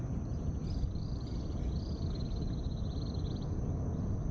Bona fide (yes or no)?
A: yes